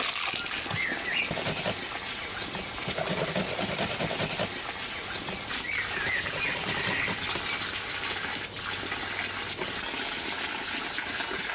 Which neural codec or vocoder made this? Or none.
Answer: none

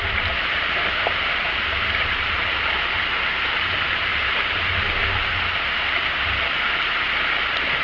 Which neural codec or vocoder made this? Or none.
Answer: none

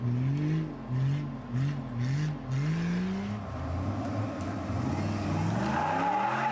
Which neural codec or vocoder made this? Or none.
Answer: none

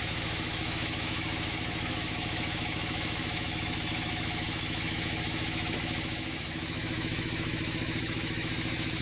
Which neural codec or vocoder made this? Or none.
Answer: autoencoder, DAC-VAE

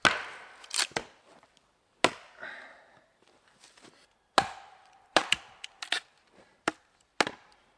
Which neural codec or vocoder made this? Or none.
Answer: none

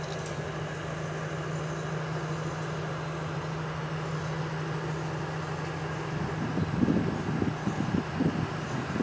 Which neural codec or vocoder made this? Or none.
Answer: none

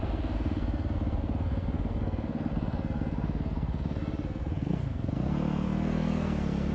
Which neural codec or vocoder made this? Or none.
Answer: codec, SNAC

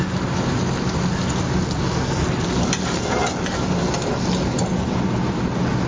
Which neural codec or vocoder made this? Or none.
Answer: none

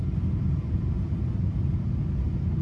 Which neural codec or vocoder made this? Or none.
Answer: none